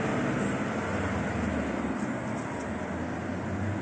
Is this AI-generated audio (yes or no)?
no